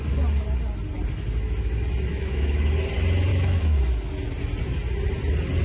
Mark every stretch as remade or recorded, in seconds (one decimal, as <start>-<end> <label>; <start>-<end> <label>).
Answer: 0.0-2.1 recorded; 2.1-2.7 remade; 2.7-3.3 recorded; 3.3-3.8 remade; 3.8-5.6 recorded